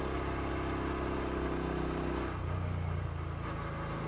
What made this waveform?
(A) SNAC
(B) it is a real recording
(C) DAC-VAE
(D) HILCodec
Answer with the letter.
B